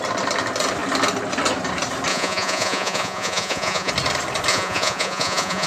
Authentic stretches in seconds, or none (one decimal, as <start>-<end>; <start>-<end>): 0.0-2.1; 3.9-4.5